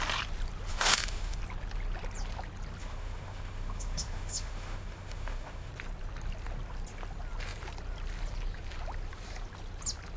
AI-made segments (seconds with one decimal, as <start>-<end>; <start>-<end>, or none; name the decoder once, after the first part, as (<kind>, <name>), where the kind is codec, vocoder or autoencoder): 0.7-1.4 (autoencoder, DAC-VAE); 2.8-5.7